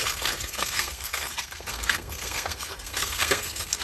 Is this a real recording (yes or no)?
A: no